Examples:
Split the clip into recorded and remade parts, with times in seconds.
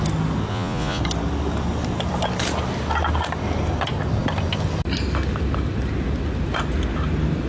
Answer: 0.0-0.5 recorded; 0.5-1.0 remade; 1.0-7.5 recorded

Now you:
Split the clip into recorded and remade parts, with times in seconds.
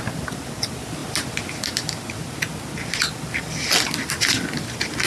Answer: 0.0-5.1 recorded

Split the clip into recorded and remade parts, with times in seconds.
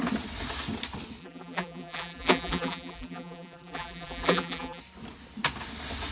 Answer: 0.0-1.2 recorded; 1.2-4.8 remade; 4.8-6.1 recorded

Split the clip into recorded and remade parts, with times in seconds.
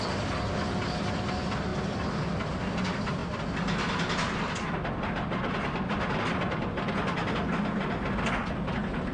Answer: 0.0-9.1 recorded